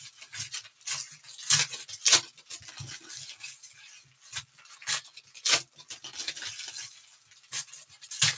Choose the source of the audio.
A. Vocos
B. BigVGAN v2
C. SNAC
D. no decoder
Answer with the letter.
D